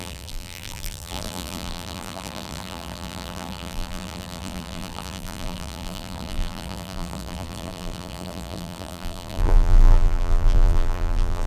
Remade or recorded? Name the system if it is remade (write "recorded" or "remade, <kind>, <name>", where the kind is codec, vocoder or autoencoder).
remade, vocoder, BigVGAN v2